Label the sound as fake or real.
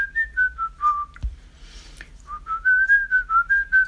real